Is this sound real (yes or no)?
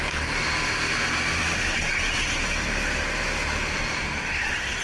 yes